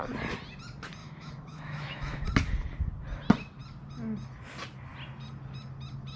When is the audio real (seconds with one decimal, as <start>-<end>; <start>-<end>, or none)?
0.0-1.0; 2.2-6.2